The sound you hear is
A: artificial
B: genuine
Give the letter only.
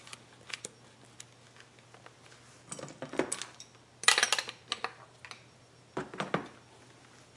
B